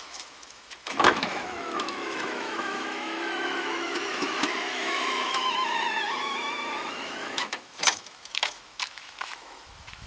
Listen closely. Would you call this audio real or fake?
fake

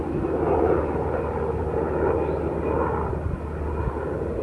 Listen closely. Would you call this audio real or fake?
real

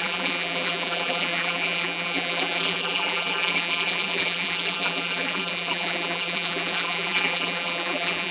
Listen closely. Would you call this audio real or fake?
fake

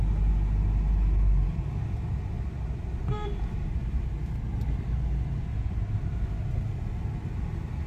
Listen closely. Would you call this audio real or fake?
real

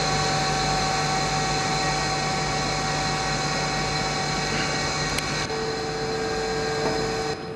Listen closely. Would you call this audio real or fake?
real